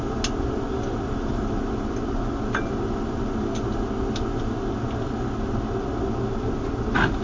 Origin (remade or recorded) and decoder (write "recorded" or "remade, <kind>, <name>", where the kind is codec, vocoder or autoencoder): recorded